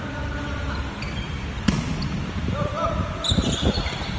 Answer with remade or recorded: recorded